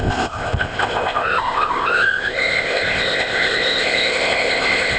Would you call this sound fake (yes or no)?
yes